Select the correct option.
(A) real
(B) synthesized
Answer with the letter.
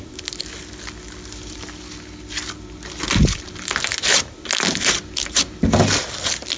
A